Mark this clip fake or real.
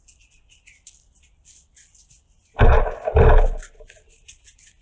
real